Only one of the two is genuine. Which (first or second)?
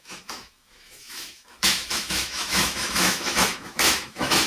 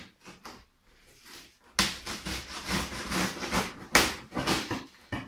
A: second